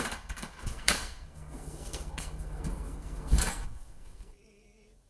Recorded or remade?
remade